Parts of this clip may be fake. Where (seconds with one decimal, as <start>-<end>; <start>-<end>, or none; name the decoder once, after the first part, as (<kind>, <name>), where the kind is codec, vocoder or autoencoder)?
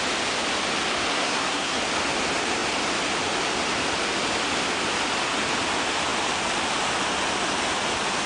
1.1-1.8 (codec, SNAC)